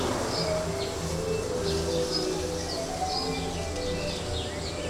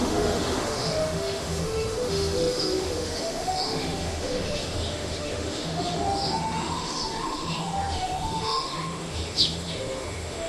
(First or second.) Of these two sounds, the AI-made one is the second